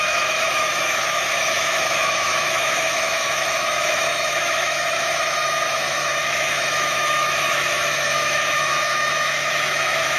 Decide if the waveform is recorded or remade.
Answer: remade